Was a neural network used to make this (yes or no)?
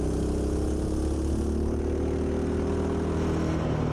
no